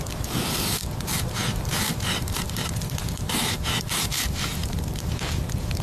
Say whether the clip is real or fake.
fake